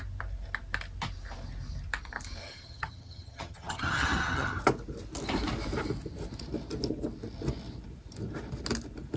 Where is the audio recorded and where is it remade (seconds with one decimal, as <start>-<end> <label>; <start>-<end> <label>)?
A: 0.0-2.4 recorded; 2.4-4.6 remade; 4.6-9.2 recorded